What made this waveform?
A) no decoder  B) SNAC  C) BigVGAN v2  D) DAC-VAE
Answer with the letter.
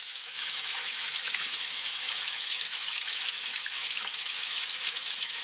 D